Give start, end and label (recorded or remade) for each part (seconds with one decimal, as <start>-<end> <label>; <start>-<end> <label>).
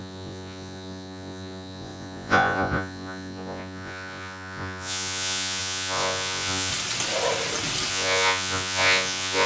0.0-6.7 remade; 6.7-7.9 recorded; 7.9-9.5 remade